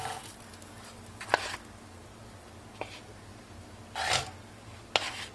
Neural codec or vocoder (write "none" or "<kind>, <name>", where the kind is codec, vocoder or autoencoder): none